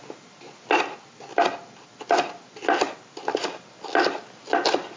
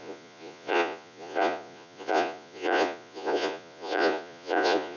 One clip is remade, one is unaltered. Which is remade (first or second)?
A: second